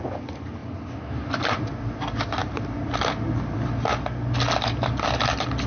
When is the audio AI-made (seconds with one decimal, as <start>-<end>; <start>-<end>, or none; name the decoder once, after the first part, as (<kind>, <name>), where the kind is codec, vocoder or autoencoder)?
2.4-3.4 (vocoder, BigVGAN v2)